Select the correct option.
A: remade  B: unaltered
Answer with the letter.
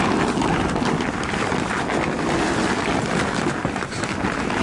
B